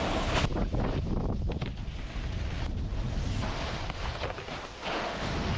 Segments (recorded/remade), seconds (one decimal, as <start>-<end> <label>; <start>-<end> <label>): 0.0-4.9 recorded; 4.9-5.6 remade